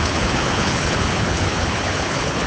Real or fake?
fake